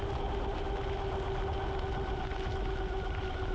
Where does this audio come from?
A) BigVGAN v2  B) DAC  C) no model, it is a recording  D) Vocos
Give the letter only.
C